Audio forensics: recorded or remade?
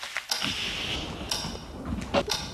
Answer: recorded